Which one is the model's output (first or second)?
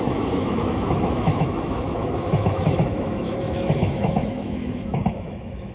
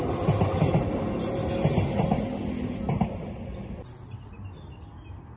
first